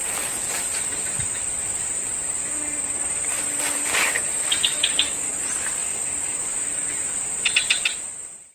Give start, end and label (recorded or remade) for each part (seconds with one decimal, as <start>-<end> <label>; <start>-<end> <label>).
0.0-8.5 recorded